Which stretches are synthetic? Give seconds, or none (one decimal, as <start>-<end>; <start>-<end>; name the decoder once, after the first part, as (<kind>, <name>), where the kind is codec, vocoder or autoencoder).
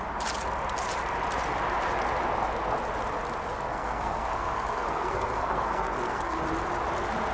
3.5-6.4 (codec, SNAC)